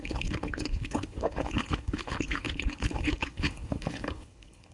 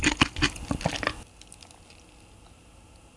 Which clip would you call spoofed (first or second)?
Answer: first